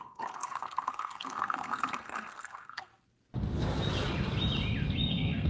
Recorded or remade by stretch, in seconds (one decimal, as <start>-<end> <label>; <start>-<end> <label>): 0.0-2.9 remade; 2.9-5.1 recorded; 5.1-5.5 remade